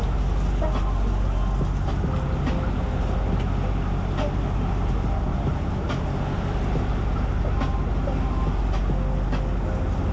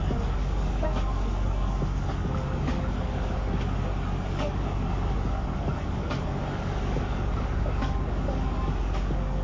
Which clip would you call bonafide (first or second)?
first